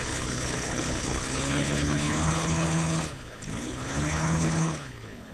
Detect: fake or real fake